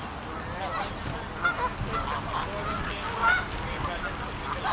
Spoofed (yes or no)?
no